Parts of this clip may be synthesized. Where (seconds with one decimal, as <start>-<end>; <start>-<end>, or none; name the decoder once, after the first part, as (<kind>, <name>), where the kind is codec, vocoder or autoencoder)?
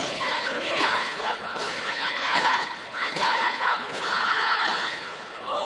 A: 0.0-5.6 (codec, HILCodec)